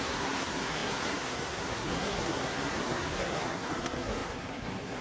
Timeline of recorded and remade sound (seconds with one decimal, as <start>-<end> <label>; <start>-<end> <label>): 0.0-5.0 remade